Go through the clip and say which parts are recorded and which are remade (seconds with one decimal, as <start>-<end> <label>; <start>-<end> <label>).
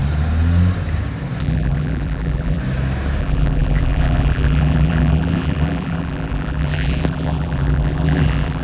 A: 0.0-1.4 recorded; 1.4-2.6 remade; 2.6-3.2 recorded; 3.2-8.6 remade